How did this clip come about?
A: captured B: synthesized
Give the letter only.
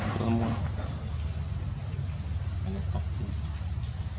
A